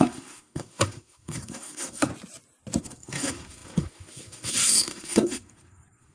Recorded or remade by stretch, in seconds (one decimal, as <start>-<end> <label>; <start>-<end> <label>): 0.0-2.1 remade; 2.1-2.8 recorded; 2.8-6.1 remade